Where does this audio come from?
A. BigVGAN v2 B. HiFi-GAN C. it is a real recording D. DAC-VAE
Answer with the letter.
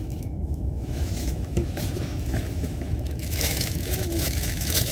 D